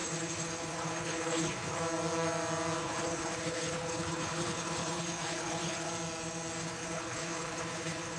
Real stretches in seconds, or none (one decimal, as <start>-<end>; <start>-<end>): 1.8-2.8; 5.9-6.6